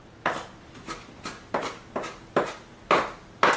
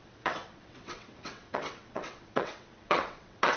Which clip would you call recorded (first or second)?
first